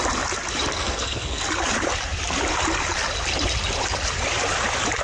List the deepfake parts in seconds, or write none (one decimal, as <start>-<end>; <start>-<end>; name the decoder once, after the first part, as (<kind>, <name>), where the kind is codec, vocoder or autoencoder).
0.7-1.4 (codec, SNAC)